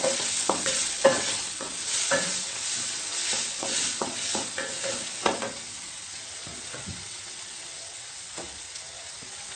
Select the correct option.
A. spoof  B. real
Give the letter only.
A